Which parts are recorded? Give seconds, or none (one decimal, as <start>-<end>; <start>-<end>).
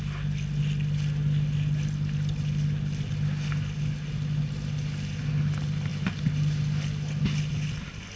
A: 0.0-8.2